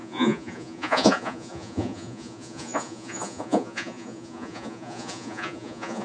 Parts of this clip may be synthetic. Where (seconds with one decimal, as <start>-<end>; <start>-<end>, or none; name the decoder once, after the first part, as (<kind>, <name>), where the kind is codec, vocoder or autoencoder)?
0.0-6.0 (vocoder, Vocos)